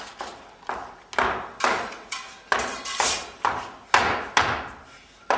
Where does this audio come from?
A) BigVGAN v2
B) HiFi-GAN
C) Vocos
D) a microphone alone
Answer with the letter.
D